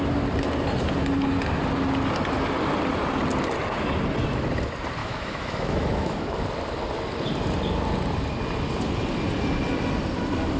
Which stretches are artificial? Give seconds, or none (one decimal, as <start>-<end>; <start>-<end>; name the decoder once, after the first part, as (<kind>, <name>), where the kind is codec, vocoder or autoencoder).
5.0-6.4 (autoencoder, DAC-VAE)